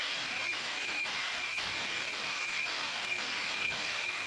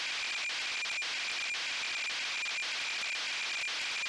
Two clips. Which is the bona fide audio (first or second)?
second